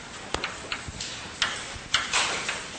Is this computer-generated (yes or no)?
no